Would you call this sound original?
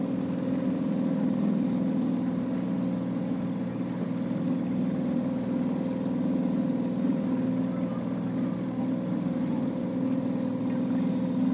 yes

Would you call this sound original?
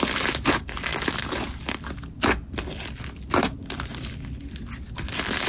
yes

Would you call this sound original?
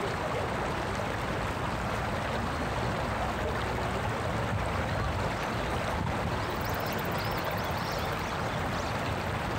yes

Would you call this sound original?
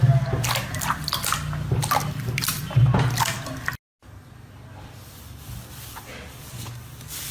yes